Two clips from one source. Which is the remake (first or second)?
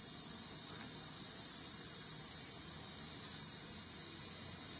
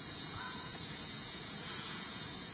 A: second